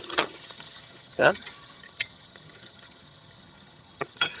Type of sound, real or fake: fake